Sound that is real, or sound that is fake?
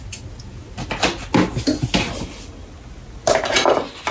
real